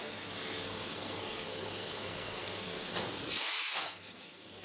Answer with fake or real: fake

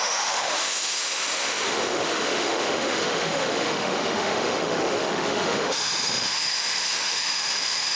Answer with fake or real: fake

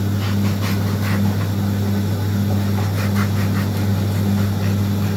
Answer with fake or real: real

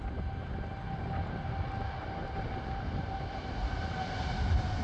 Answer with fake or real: real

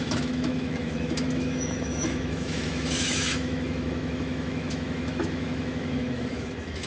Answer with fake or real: fake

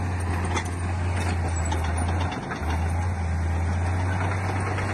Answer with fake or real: real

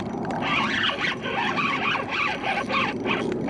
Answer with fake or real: real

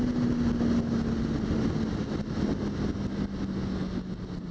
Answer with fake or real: real